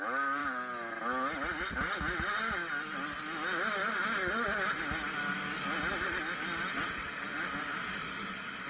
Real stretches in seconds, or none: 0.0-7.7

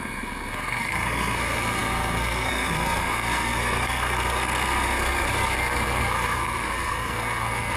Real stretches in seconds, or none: none

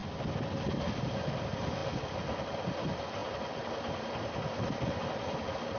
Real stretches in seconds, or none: 0.0-5.8

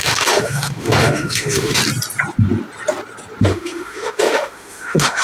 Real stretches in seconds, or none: 1.8-3.4

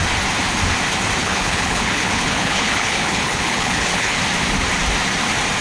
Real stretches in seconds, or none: 0.0-1.2; 4.2-5.6